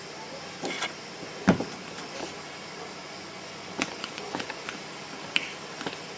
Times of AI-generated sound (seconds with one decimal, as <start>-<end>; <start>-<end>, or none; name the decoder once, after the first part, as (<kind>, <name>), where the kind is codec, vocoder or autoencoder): 3.0-4.6 (vocoder, Vocos)